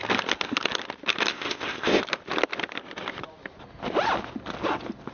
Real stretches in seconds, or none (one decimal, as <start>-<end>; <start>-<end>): 0.0-1.3; 2.0-5.1